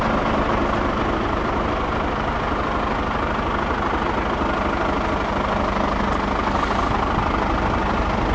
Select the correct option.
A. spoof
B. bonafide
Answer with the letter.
B